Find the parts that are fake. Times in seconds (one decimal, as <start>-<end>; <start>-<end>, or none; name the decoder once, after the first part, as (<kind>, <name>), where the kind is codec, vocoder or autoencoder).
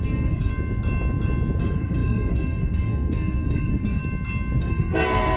0.0-0.5 (codec, SNAC); 1.6-4.0; 4.6-5.4